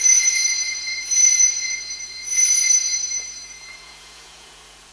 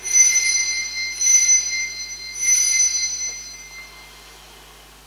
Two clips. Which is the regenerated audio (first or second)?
first